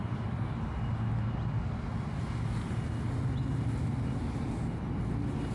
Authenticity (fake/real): real